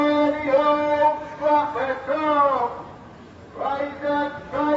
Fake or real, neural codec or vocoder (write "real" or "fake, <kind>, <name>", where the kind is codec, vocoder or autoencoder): fake, vocoder, BigVGAN v2